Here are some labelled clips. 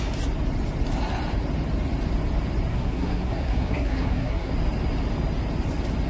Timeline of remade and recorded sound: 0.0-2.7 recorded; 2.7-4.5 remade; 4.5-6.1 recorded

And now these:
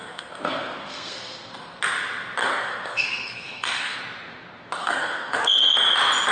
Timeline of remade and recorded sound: 0.0-1.8 remade; 1.8-2.4 recorded; 2.4-4.0 remade; 4.0-4.8 recorded; 4.8-5.7 remade; 5.7-6.3 recorded

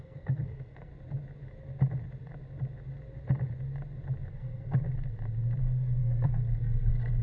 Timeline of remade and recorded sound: 0.0-0.9 remade; 0.9-4.3 recorded; 4.3-4.8 remade; 4.8-5.6 recorded; 5.6-7.2 remade

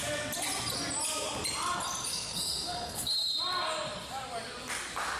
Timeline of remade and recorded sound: 0.0-2.1 recorded; 2.1-3.1 remade; 3.1-5.2 recorded

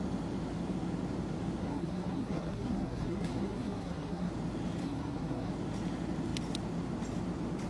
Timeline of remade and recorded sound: 0.0-1.6 recorded; 1.6-4.3 remade; 4.3-4.8 recorded; 4.8-5.5 remade; 5.5-7.7 recorded

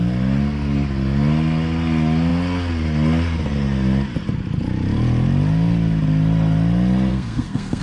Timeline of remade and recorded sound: 0.0-7.1 recorded; 7.1-7.8 remade

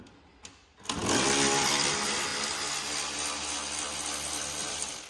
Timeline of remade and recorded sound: 0.0-5.1 recorded